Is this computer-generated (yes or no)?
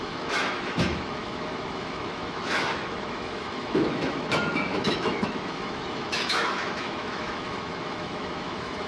yes